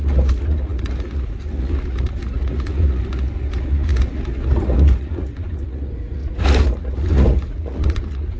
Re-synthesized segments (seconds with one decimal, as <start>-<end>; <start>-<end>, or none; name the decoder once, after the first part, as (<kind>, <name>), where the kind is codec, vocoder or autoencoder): 0.0-8.4 (vocoder, Vocos)